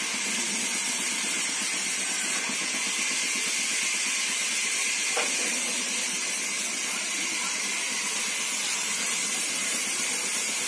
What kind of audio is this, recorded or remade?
recorded